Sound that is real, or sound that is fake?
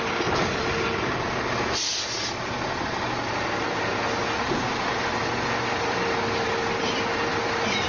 real